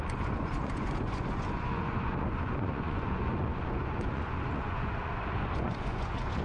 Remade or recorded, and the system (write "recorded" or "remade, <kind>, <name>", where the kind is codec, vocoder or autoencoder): remade, vocoder, Vocos